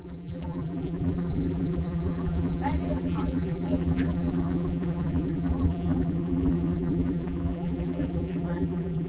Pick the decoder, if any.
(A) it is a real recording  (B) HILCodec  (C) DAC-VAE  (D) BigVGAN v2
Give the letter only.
D